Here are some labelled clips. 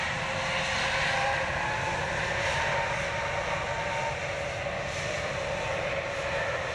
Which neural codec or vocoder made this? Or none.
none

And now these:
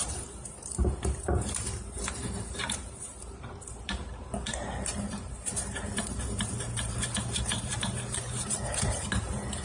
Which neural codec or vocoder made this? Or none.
vocoder, BigVGAN v2